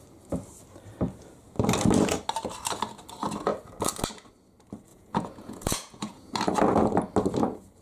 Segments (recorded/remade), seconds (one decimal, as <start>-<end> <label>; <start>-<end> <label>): 0.0-4.9 recorded; 4.9-6.3 remade; 6.3-7.8 recorded